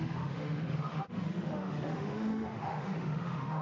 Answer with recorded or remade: remade